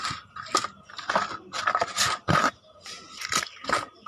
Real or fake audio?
fake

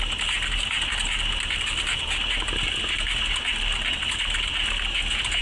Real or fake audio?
real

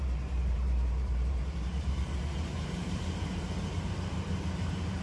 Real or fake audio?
fake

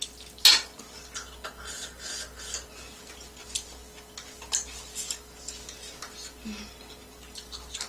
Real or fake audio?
real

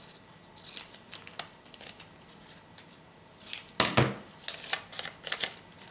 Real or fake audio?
real